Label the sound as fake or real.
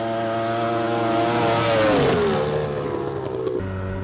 real